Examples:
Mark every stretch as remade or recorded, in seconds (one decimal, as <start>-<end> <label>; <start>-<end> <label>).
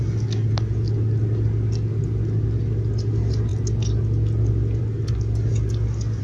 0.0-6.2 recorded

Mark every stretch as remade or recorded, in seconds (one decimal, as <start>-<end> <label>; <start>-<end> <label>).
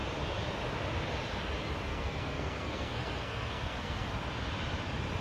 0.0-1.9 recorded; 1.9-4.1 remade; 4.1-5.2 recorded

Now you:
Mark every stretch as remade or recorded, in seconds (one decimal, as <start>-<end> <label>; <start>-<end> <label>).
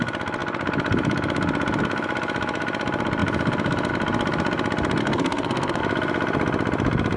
0.0-5.0 recorded; 5.0-5.8 remade; 5.8-7.2 recorded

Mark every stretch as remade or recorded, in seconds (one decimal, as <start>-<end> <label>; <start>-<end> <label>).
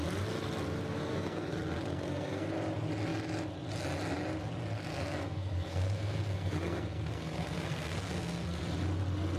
0.0-1.1 recorded; 1.1-2.5 remade; 2.5-4.9 recorded; 4.9-8.6 remade; 8.6-9.4 recorded